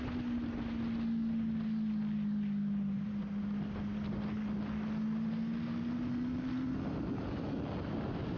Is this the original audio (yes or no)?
yes